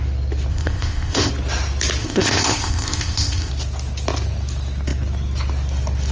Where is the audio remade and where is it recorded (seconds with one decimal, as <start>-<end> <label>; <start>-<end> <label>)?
0.0-0.5 recorded; 0.5-1.3 remade; 1.3-2.0 recorded; 2.0-3.5 remade; 3.5-6.1 recorded